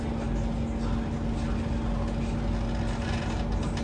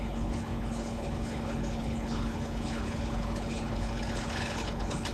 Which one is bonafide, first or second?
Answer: first